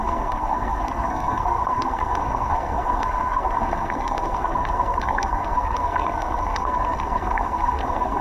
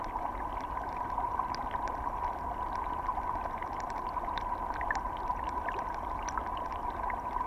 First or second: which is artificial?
first